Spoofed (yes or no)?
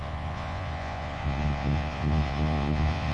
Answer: yes